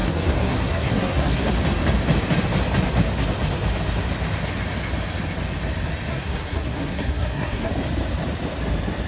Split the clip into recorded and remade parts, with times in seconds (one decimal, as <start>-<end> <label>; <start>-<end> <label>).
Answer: 0.0-1.5 remade; 1.5-6.1 recorded; 6.1-7.7 remade; 7.7-9.1 recorded